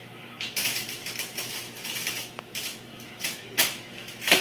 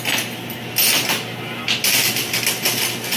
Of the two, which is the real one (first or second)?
second